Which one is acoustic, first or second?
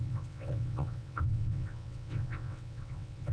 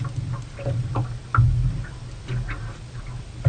second